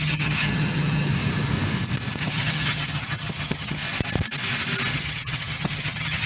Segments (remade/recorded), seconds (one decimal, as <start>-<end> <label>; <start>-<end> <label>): 0.0-1.1 remade; 1.1-2.2 recorded; 2.2-3.8 remade; 3.8-4.9 recorded; 4.9-6.3 remade